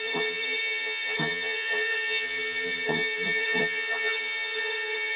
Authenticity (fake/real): fake